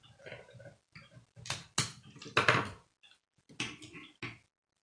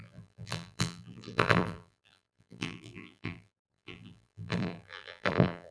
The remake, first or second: second